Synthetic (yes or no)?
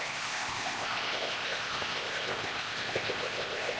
yes